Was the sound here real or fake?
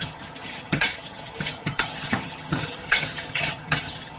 fake